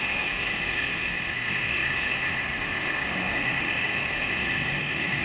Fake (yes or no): yes